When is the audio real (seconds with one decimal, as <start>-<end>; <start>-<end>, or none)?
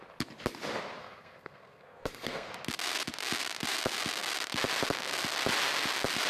0.0-1.0; 2.5-6.3